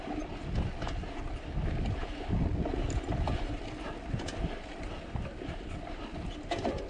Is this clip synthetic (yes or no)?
no